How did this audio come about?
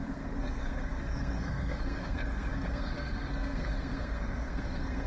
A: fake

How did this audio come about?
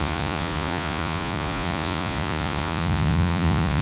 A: fake